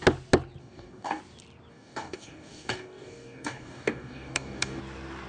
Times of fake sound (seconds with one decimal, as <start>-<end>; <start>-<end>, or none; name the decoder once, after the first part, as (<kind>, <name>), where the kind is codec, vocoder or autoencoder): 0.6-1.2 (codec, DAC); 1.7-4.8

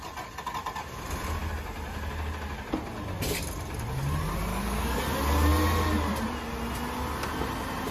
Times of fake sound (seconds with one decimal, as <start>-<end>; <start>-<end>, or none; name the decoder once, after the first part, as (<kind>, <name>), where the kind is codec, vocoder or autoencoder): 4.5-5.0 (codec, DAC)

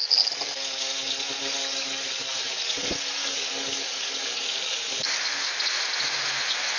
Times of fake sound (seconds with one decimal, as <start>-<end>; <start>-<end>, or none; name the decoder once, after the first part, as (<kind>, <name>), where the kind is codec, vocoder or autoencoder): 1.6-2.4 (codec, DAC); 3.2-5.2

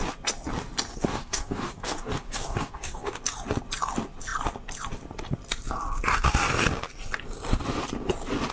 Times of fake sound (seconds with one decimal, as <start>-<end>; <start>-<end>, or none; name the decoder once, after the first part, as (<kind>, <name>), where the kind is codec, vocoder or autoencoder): 0.9-3.2 (codec, DAC)

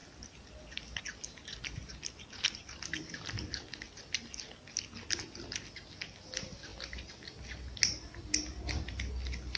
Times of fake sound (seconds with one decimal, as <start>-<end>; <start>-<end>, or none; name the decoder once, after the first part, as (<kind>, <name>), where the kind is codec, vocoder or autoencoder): none

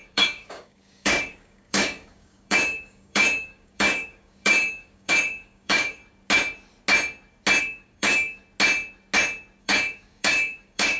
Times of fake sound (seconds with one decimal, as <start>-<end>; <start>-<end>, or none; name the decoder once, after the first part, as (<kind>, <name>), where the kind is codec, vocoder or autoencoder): 0.0-6.0 (codec, DAC); 7.6-8.4; 9.6-11.0

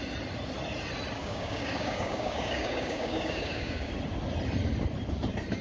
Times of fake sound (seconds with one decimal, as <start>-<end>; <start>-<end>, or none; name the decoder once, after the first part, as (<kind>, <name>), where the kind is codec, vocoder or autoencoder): 1.2-3.9 (codec, DAC)